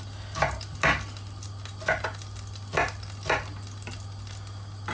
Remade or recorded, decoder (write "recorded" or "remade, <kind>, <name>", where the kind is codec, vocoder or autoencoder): recorded